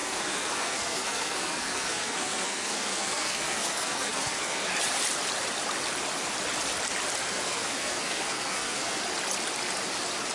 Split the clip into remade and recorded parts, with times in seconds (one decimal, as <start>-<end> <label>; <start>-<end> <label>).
0.0-4.7 remade; 4.7-7.2 recorded; 7.2-9.0 remade; 9.0-10.3 recorded